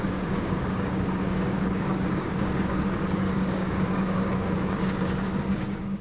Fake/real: fake